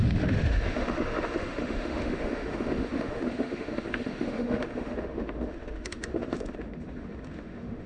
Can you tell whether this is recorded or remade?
remade